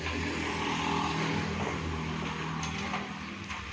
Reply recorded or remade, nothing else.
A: recorded